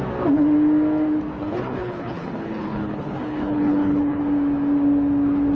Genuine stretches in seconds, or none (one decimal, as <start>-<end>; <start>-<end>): 0.0-1.4; 4.2-5.5